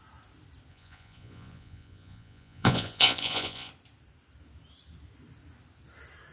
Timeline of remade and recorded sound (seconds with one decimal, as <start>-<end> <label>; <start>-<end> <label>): 0.0-0.7 recorded; 0.7-3.7 remade; 3.7-6.3 recorded